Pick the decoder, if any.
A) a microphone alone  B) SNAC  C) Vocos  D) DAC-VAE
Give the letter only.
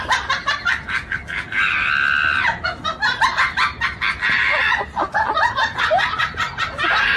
A